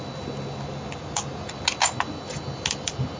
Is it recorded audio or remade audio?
recorded